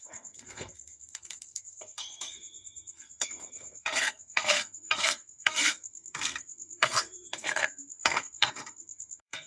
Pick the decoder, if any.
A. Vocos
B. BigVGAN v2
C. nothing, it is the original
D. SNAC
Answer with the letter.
D